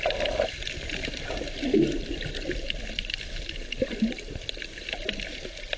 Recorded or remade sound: recorded